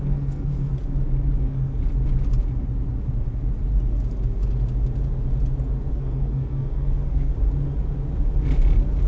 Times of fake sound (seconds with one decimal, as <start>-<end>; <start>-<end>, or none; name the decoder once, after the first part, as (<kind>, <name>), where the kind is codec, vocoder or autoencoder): 0.0-0.7 (codec, SNAC); 1.4-1.8; 5.9-7.3